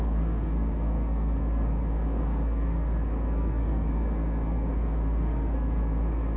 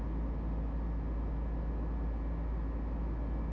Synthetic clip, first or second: first